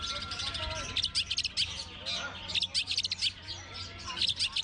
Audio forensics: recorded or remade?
recorded